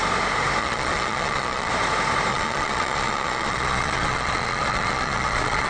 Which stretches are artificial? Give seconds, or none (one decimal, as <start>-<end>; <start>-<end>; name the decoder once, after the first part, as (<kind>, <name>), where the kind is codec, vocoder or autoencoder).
0.6-1.7 (vocoder, Vocos); 2.3-5.7